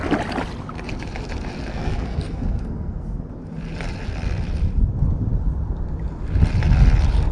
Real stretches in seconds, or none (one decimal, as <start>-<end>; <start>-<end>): 0.0-1.7; 3.3-7.3